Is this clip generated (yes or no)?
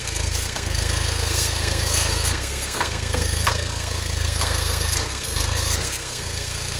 yes